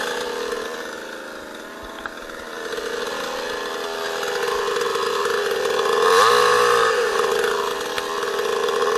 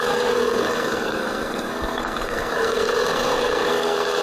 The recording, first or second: first